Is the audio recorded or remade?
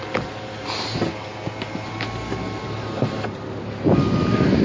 recorded